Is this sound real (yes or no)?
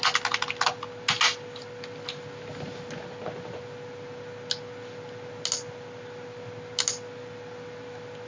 yes